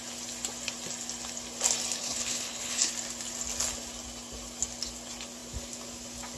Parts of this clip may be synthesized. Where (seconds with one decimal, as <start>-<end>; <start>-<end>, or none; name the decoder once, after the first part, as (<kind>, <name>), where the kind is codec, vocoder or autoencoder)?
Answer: 2.0-2.9 (codec, HILCodec)